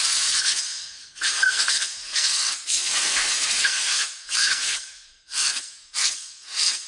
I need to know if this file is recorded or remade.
remade